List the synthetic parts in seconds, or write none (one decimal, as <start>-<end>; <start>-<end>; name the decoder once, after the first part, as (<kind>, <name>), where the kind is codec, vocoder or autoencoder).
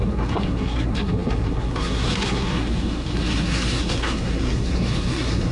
0.0-5.5 (codec, SNAC)